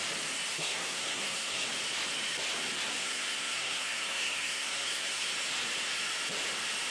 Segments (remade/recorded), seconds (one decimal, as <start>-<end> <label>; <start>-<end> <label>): 0.0-0.5 recorded; 0.5-1.7 remade; 1.7-2.9 recorded; 2.9-5.3 remade; 5.3-6.9 recorded